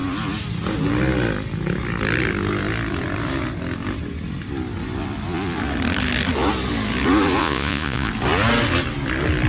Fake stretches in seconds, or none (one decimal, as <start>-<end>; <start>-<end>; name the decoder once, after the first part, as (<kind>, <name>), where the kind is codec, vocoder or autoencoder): 7.4-8.1 (vocoder, Vocos)